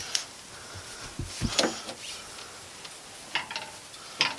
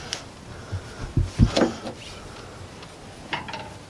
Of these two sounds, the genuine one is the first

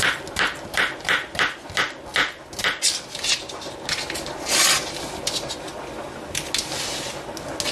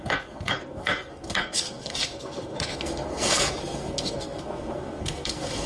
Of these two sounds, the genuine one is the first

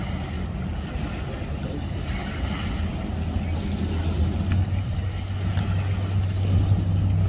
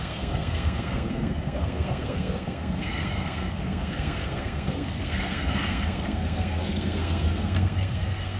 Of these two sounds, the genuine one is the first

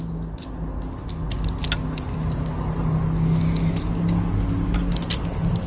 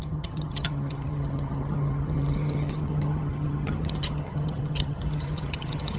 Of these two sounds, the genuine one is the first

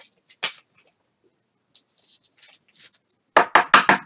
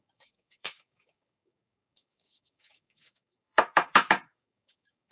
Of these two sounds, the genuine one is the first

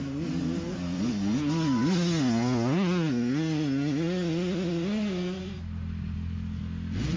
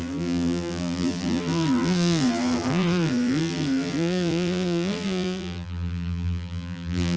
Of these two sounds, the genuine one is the first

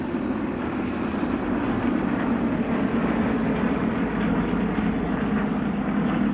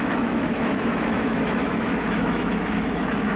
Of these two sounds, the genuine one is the first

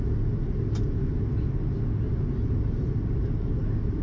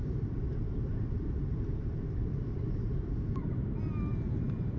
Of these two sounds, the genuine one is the first